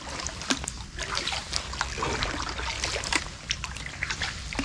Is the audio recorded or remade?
recorded